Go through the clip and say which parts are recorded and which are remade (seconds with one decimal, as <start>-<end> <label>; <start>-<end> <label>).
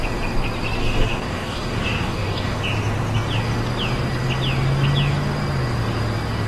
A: 0.0-0.8 recorded; 0.8-2.6 remade; 2.6-6.5 recorded